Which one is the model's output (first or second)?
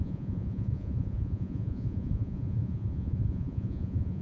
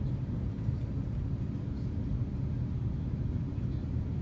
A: first